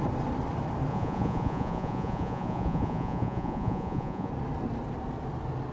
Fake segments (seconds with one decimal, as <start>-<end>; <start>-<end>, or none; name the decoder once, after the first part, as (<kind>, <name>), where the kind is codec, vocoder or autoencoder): 0.9-4.3 (vocoder, Vocos)